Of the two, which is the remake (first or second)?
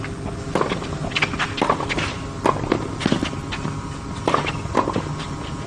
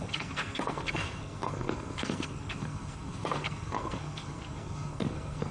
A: second